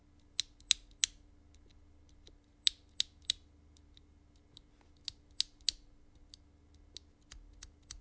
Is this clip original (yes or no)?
yes